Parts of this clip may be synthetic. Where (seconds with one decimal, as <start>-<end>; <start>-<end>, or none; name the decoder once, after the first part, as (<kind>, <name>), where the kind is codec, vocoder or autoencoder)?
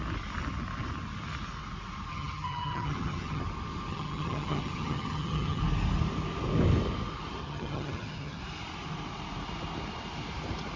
2.1-3.4 (vocoder, HiFi-GAN); 3.9-5.6; 7.4-8.4